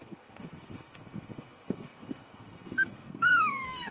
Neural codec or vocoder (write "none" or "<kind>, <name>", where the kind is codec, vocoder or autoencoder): codec, SNAC